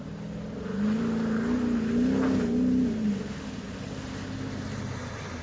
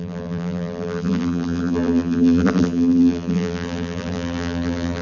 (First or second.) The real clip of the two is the first